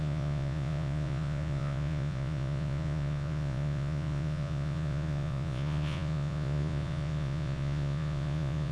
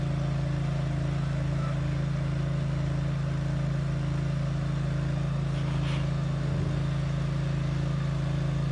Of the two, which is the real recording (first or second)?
second